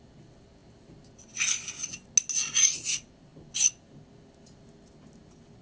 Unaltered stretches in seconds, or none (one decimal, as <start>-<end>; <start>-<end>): 0.0-5.6